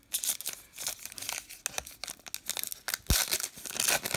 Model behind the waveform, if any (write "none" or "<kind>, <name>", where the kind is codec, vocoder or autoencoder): none